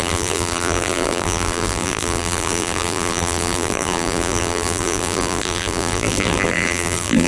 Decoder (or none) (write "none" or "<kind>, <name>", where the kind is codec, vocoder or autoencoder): vocoder, BigVGAN v2